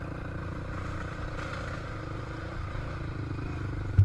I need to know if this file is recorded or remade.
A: recorded